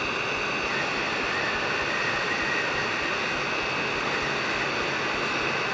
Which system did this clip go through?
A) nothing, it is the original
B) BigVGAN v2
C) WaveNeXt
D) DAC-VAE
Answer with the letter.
A